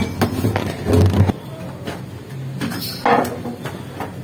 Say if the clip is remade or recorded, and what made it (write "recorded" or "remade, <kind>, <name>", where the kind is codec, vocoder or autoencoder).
recorded